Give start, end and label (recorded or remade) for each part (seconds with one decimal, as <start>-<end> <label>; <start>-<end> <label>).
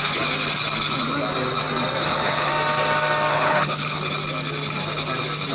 0.0-2.0 recorded; 2.0-2.5 remade; 2.5-3.3 recorded; 3.3-4.0 remade; 4.0-5.5 recorded